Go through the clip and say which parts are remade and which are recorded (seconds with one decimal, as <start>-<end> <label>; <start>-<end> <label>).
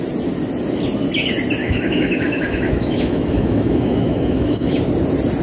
0.0-1.6 recorded; 1.6-4.8 remade; 4.8-5.4 recorded